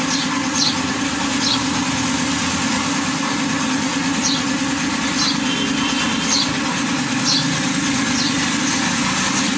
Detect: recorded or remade recorded